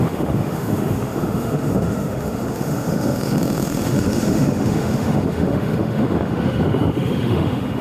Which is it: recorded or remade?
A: remade